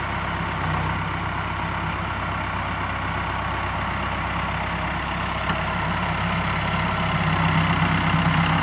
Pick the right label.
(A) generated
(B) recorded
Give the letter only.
B